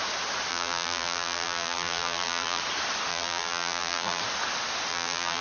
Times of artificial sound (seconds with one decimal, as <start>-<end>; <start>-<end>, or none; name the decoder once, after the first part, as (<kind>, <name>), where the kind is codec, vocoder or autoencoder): 0.5-2.6 (vocoder, BigVGAN v2); 3.1-4.2; 4.9-5.4